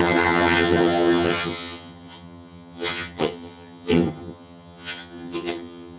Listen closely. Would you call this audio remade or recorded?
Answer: remade